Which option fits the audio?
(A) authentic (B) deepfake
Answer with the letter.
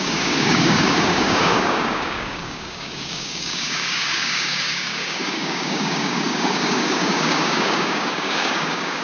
B